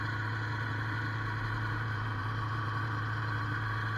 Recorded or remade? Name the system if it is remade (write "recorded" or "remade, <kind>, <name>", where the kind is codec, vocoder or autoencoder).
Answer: remade, vocoder, BigVGAN v2